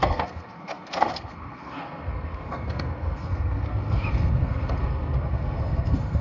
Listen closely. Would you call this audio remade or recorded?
remade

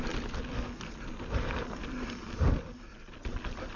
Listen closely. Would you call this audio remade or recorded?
recorded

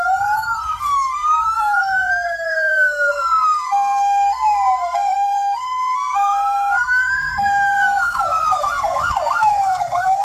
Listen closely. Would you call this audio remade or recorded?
remade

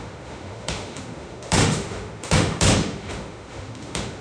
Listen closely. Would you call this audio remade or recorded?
remade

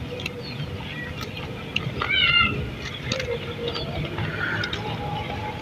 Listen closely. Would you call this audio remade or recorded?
recorded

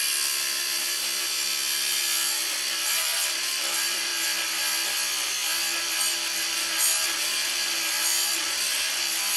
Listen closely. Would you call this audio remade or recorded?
remade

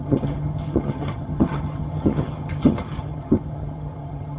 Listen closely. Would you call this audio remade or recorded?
remade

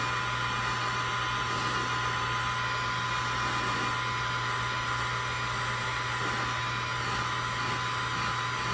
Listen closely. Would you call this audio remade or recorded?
recorded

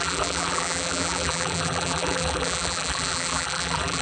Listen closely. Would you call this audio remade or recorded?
remade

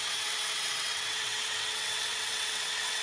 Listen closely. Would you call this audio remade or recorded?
remade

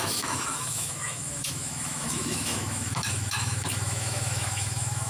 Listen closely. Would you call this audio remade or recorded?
remade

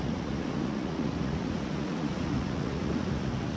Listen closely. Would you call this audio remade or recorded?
remade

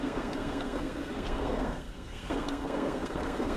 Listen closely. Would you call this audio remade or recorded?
remade